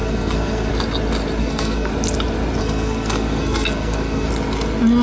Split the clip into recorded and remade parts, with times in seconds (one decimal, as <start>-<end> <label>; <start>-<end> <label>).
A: 0.0-0.7 remade; 0.7-1.4 recorded; 1.4-1.9 remade; 1.9-2.6 recorded; 2.6-4.3 remade; 4.3-5.0 recorded